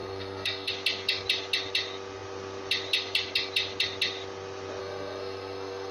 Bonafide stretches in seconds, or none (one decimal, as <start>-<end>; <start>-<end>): 0.7-4.8